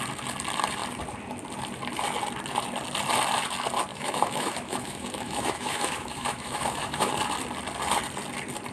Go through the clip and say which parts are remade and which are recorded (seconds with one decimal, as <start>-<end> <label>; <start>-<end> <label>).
0.0-3.9 recorded; 3.9-7.1 remade; 7.1-8.7 recorded